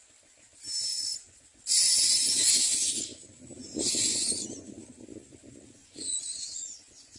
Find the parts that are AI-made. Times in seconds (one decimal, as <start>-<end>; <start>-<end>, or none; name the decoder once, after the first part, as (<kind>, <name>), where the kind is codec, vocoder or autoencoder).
0.9-1.4 (vocoder, Vocos); 4.1-4.7; 5.8-7.2